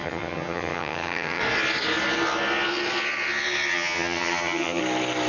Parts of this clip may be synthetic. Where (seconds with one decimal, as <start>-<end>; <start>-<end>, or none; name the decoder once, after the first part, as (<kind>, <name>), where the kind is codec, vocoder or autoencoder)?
0.0-1.4 (vocoder, HiFi-GAN); 3.7-4.8